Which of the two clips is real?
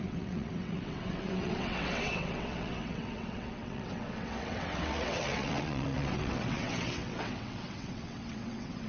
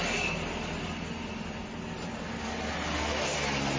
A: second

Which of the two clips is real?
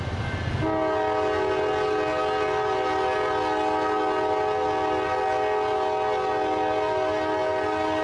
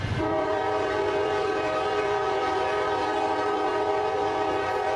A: first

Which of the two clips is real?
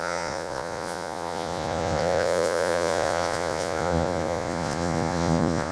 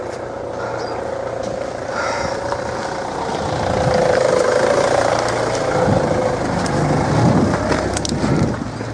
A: second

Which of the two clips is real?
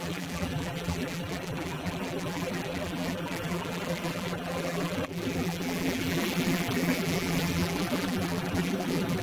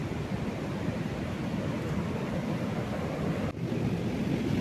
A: second